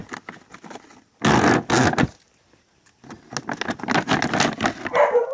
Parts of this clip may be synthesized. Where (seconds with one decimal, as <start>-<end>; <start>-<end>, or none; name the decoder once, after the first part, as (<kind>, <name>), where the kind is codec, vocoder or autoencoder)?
none